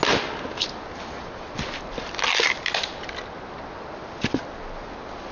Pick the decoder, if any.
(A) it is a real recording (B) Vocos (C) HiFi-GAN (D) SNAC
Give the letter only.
A